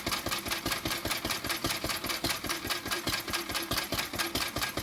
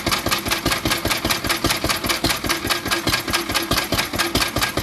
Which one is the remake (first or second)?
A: first